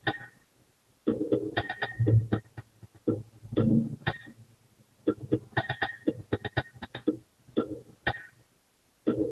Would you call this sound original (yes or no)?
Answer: yes